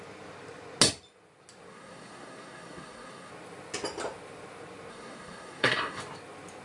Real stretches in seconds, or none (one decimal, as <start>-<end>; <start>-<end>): 0.0-1.7; 3.3-4.9; 6.0-6.6